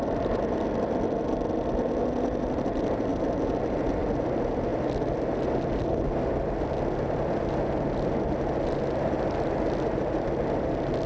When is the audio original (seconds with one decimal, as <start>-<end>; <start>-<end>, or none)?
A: 0.0-11.1